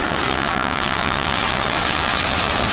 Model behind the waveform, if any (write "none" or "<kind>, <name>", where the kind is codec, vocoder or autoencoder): vocoder, WaveNeXt